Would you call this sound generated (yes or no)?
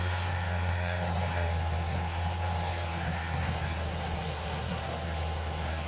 yes